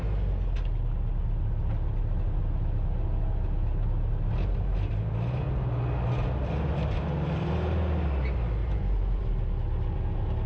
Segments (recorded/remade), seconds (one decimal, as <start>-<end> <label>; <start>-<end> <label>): 0.0-8.6 recorded; 8.6-9.3 remade; 9.3-10.5 recorded